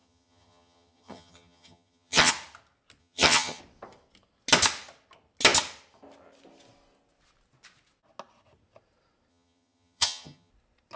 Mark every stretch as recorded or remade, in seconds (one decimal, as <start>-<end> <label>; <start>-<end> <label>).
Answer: 0.0-2.3 remade; 2.3-3.0 recorded; 3.0-3.6 remade; 3.6-9.3 recorded; 9.3-10.5 remade; 10.5-11.0 recorded